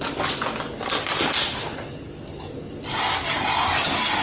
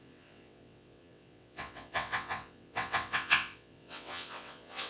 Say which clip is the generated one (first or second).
second